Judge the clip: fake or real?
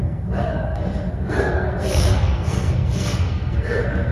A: fake